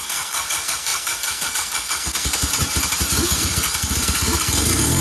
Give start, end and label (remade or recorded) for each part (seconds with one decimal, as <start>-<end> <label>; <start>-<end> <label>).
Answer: 0.0-2.5 remade; 2.5-3.1 recorded; 3.1-5.0 remade